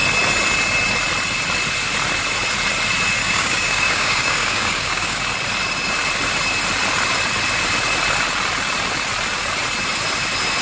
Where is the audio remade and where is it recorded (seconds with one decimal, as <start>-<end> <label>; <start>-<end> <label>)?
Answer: 0.0-3.2 recorded; 3.2-5.2 remade; 5.2-10.6 recorded